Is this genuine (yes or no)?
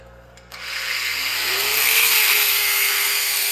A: no